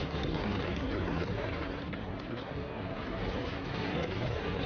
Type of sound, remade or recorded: remade